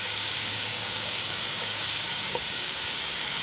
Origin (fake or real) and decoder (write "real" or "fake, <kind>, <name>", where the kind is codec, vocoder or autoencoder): fake, codec, DAC